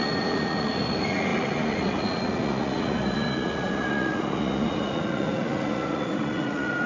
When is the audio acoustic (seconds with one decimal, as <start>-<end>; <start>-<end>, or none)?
none